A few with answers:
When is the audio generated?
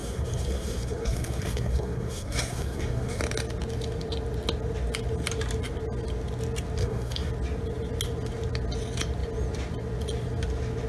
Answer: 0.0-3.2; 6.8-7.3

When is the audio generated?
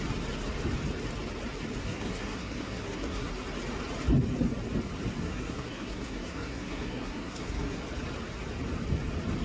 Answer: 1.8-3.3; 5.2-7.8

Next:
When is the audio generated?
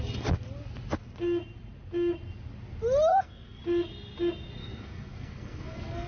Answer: 3.1-3.6; 4.6-6.1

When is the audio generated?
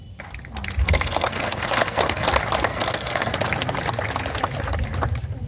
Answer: 0.8-2.3; 2.7-3.3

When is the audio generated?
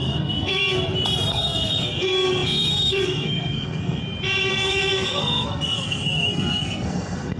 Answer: 0.0-0.6; 1.3-4.0; 4.5-7.4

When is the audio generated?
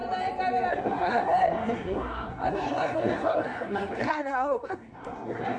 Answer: 0.7-5.6